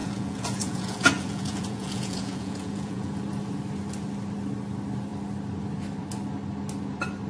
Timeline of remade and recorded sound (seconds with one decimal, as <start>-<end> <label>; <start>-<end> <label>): 0.0-3.1 remade; 3.1-7.3 recorded